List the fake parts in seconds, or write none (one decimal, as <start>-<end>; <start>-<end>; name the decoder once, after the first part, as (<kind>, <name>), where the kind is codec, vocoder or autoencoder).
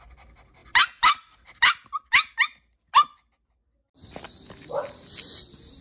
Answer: none